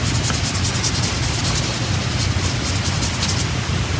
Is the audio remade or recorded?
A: recorded